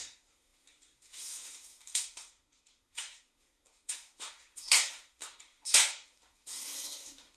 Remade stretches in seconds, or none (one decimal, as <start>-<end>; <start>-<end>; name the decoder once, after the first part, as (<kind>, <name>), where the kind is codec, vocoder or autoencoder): 0.0-7.4 (codec, SNAC)